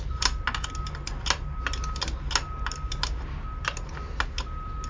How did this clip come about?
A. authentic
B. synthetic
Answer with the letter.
A